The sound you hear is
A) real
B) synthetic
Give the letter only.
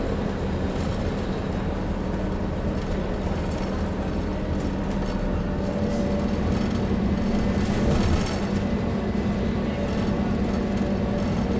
A